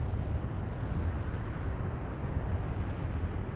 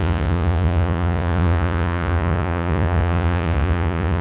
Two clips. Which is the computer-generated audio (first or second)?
second